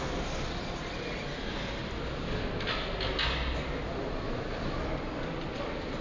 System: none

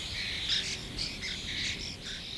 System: none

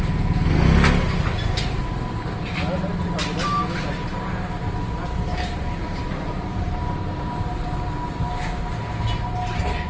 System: none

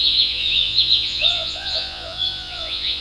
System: vocoder, Vocos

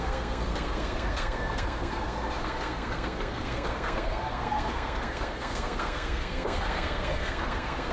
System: codec, SNAC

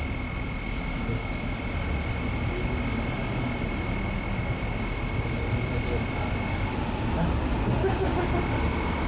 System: none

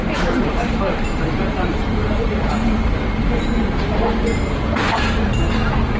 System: vocoder, BigVGAN v2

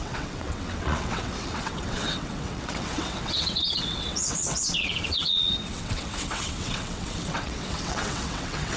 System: vocoder, WaveNeXt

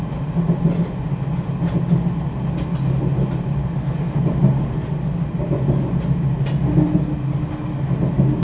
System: none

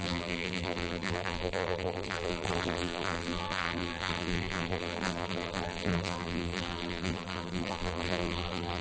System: vocoder, BigVGAN v2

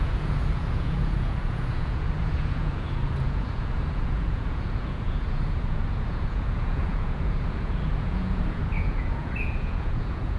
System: vocoder, Vocos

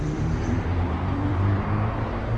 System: vocoder, BigVGAN v2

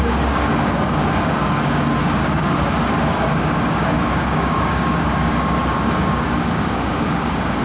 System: codec, DAC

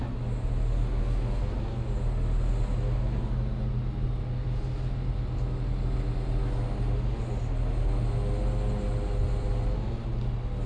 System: none